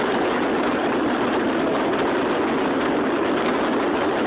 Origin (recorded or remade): recorded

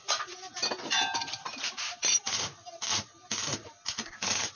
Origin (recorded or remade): recorded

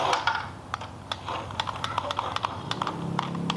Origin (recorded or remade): recorded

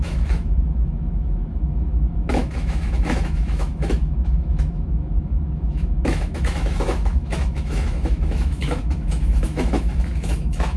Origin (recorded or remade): remade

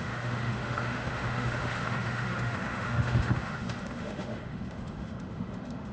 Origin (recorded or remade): remade